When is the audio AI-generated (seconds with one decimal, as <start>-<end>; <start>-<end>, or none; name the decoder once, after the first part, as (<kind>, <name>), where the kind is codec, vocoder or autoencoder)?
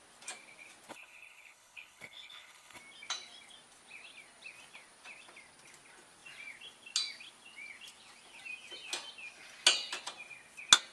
0.9-2.8 (codec, HILCodec)